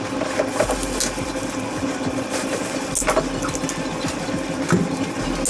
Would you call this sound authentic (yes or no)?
yes